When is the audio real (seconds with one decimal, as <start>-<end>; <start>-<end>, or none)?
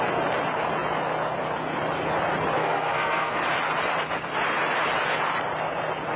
0.0-2.6; 3.4-6.2